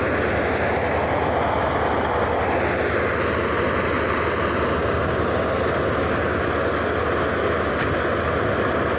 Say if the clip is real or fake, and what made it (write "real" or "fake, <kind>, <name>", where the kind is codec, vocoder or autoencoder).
real